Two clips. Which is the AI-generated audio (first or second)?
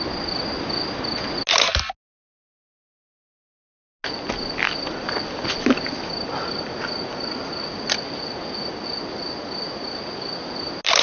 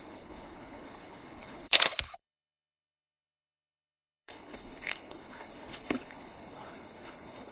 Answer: second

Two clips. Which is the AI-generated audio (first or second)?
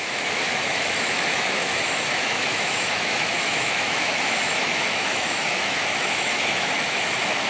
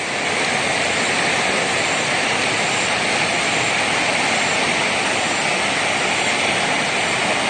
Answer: first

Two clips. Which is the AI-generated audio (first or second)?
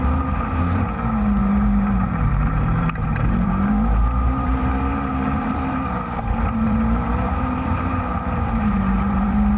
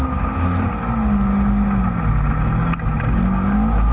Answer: first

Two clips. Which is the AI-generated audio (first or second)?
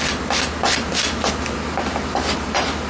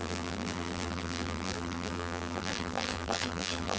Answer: second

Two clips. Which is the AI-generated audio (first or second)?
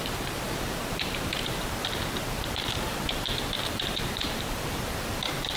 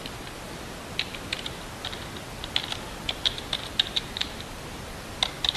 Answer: first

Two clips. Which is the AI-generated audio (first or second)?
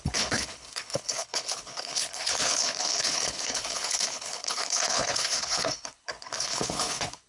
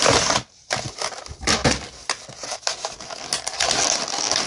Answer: first